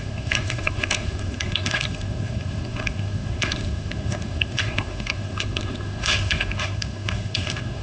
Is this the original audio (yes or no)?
no